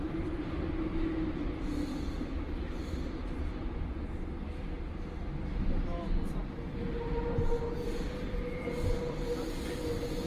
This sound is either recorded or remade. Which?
recorded